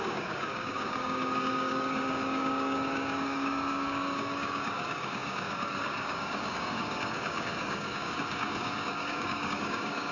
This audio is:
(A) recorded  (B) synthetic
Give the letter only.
B